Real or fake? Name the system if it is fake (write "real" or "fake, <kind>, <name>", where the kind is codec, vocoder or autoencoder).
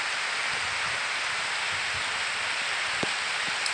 real